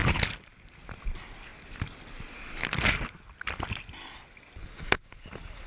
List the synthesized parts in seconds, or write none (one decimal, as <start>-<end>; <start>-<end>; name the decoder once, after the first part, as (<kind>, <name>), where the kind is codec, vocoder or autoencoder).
4.6-5.2 (codec, DAC)